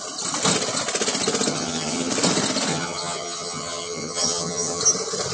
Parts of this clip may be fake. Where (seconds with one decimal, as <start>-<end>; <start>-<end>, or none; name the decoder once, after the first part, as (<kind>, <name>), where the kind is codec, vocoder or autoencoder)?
1.5-2.1 (vocoder, HiFi-GAN); 2.7-4.8

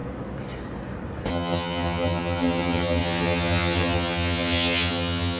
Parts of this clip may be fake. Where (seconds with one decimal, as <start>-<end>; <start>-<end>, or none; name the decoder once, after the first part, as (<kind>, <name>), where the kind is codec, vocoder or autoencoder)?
1.3-5.4 (vocoder, HiFi-GAN)

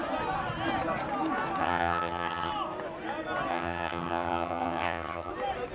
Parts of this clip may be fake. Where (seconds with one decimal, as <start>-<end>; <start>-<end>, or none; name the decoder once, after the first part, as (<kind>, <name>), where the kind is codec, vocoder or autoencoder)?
1.6-2.5 (vocoder, HiFi-GAN); 3.5-5.3

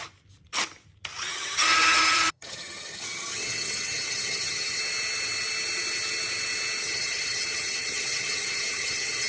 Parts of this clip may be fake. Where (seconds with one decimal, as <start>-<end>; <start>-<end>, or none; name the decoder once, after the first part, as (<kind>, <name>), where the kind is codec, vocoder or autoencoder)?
1.3-4.8 (vocoder, HiFi-GAN); 6.8-9.3

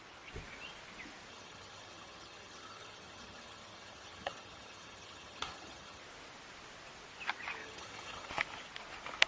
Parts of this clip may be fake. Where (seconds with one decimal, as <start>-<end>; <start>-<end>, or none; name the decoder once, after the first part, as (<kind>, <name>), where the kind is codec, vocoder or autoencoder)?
1.3-6.0 (vocoder, HiFi-GAN); 7.6-8.3

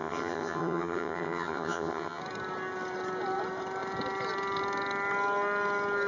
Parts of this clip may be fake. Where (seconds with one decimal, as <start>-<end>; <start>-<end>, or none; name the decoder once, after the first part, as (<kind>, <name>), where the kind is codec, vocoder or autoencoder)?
0.0-2.2 (vocoder, HiFi-GAN)